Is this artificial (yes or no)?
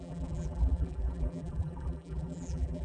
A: yes